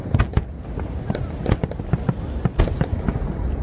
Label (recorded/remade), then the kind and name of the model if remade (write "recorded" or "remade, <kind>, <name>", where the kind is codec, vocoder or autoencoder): recorded